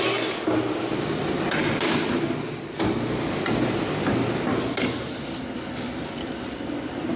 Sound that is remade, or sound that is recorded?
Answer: recorded